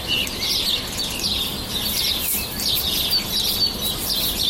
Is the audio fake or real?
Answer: real